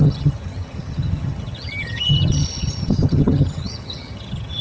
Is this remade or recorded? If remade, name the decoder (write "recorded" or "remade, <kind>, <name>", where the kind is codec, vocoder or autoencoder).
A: remade, vocoder, HiFi-GAN